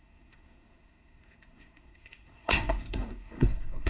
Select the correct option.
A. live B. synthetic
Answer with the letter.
B